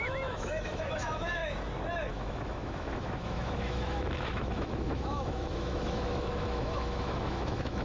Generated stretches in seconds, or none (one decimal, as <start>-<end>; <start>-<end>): 0.0-1.4; 2.1-7.8